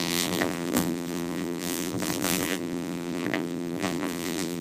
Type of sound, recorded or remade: remade